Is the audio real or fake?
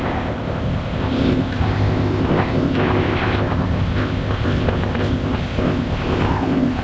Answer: fake